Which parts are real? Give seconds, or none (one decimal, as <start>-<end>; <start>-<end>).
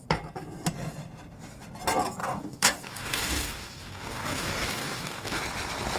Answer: 0.0-2.2; 5.4-6.0